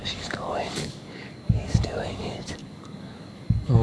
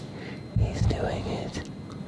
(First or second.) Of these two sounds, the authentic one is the second